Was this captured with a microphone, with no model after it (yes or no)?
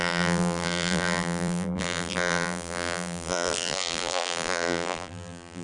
no